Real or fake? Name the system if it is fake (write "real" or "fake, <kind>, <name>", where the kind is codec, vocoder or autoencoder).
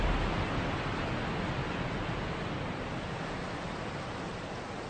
real